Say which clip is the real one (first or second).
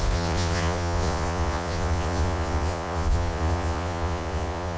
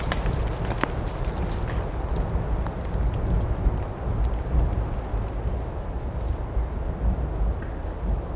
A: second